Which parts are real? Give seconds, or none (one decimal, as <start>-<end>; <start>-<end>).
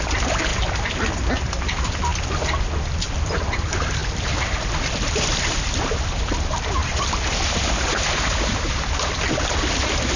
0.5-1.4; 2.1-2.8; 4.0-5.2